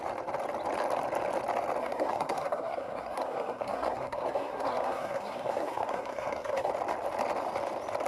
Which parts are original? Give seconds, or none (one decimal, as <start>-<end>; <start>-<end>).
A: 0.0-1.8; 6.7-8.1